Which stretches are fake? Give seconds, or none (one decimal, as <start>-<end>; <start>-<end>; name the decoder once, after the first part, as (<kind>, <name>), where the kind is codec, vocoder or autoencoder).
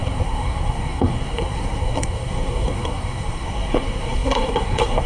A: 0.0-5.1 (codec, SNAC)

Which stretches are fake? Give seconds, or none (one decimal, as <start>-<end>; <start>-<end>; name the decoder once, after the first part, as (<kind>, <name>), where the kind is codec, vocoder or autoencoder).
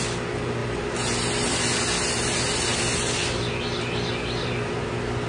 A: none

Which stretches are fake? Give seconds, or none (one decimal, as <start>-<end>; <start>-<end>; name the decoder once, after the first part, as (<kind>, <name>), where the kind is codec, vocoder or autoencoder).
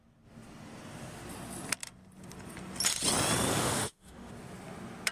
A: 3.5-4.3 (autoencoder, DAC-VAE)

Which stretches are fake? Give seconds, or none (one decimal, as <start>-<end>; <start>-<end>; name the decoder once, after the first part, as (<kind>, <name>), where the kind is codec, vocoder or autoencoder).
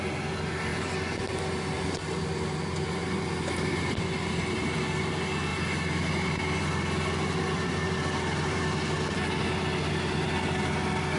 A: none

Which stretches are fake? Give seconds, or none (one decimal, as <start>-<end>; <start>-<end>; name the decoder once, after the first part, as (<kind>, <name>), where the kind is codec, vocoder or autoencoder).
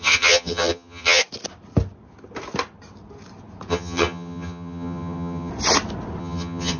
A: 0.0-1.2 (vocoder, HiFi-GAN); 3.7-5.5; 6.2-6.8